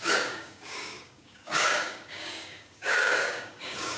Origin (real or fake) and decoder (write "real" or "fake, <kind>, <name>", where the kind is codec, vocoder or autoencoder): fake, codec, DAC